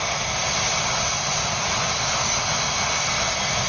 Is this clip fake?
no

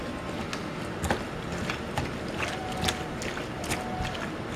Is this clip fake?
no